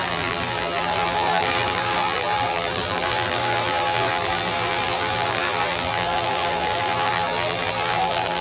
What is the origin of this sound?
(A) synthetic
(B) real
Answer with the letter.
A